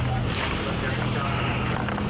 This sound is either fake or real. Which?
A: real